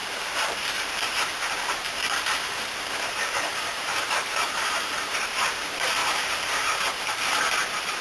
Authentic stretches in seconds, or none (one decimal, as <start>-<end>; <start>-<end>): none